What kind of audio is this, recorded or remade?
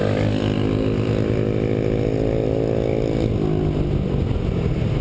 recorded